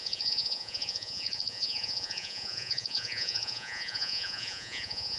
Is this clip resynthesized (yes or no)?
yes